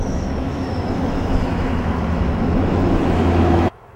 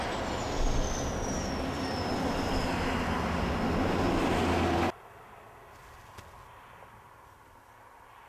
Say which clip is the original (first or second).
second